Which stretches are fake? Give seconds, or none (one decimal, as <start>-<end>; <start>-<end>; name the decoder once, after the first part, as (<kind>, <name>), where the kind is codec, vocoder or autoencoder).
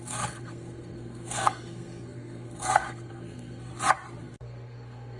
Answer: 0.0-3.7 (codec, SNAC); 4.2-5.2